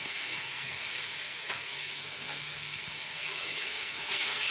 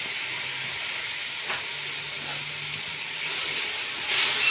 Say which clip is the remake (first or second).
first